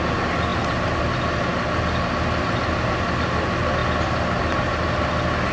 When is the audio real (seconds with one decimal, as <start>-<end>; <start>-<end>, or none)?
0.0-5.5